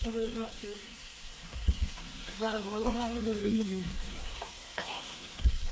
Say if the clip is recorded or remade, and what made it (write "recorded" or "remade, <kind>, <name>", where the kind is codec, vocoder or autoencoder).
remade, codec, SNAC